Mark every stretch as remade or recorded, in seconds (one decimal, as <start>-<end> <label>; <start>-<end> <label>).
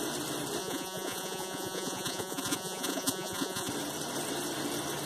0.0-0.6 recorded; 0.6-3.7 remade; 3.7-5.1 recorded